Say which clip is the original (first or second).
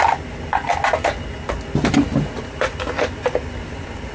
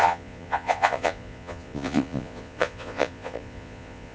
first